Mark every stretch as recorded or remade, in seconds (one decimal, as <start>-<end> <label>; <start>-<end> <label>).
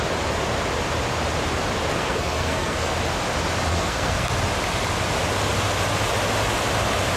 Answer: 0.0-1.9 recorded; 1.9-3.0 remade; 3.0-3.7 recorded; 3.7-4.3 remade; 4.3-7.2 recorded